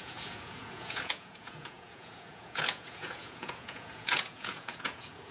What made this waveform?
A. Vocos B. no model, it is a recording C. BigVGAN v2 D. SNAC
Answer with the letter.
A